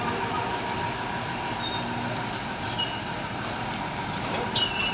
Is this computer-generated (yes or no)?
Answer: no